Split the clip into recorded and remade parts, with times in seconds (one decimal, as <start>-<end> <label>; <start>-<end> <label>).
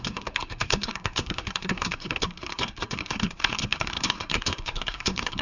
0.0-5.4 remade